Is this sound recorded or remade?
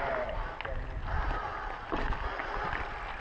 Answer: recorded